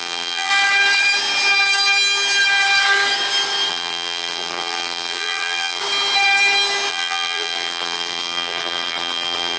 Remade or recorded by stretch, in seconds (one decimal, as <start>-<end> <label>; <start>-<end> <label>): 0.0-0.5 remade; 0.5-3.7 recorded; 3.7-5.8 remade; 5.8-6.9 recorded; 6.9-9.6 remade